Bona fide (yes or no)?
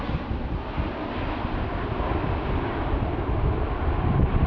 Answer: yes